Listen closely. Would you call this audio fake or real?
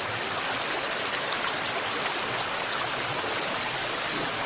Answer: real